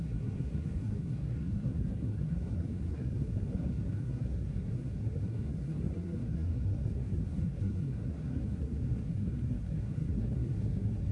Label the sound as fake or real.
fake